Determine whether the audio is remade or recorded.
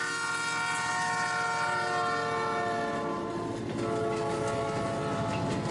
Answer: recorded